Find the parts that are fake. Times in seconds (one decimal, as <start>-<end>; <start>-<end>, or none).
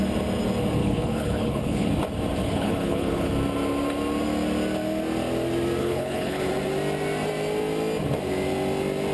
0.8-1.9; 2.4-3.3; 5.8-6.5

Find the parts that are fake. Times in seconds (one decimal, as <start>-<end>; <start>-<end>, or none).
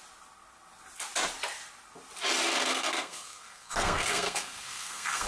2.7-5.3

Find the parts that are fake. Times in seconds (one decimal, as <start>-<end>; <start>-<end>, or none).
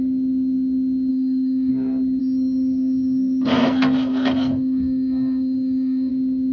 1.1-1.7; 2.2-6.1